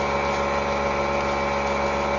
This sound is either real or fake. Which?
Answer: real